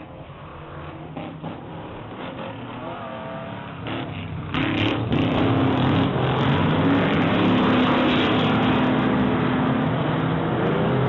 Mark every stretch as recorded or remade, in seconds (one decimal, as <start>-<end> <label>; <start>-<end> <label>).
0.0-11.1 recorded